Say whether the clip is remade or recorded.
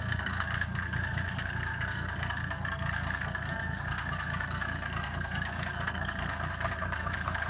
remade